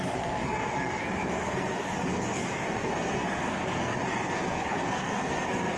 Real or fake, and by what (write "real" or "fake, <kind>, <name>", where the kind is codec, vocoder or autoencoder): fake, codec, SNAC